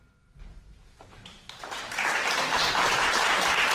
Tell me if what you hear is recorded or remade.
remade